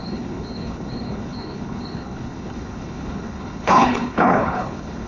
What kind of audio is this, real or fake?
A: fake